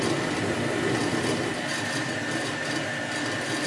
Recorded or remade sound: recorded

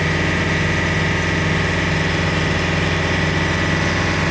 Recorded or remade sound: recorded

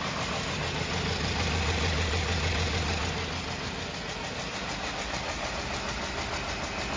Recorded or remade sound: recorded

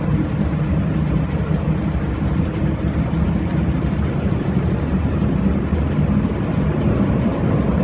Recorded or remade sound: recorded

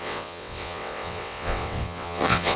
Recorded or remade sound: remade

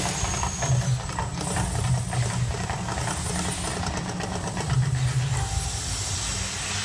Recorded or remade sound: recorded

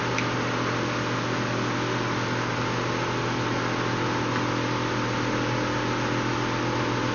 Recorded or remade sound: recorded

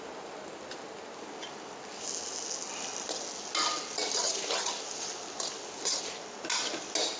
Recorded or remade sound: recorded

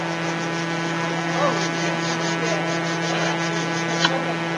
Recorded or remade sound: recorded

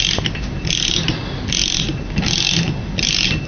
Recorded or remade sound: recorded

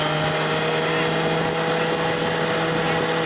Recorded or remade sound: recorded